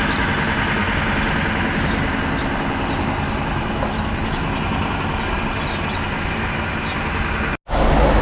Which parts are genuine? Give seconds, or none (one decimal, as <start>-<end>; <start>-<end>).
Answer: 0.0-8.2